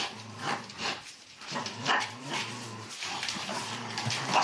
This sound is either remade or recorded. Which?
remade